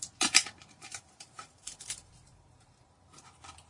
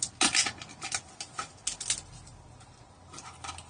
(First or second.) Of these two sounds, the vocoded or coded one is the first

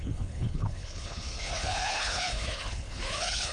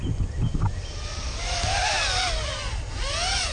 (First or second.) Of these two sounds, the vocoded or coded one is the first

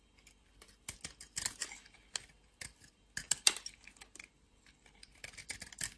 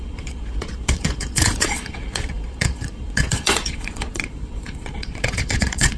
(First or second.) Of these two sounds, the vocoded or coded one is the second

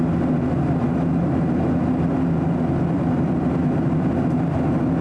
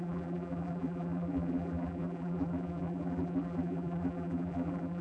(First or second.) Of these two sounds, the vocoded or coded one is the second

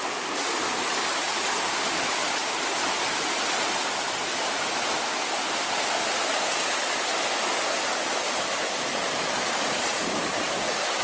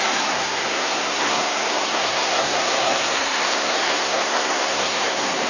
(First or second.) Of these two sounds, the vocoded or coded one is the second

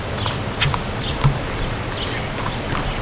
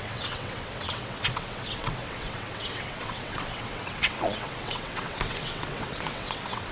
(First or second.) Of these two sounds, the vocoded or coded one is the second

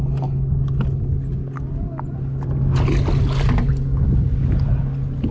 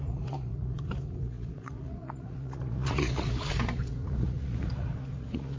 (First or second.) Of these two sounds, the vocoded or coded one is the second